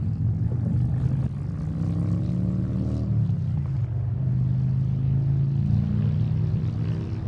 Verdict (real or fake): real